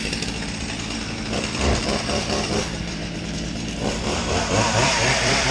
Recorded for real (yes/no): no